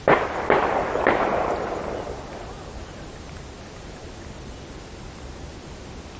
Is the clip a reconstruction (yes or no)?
no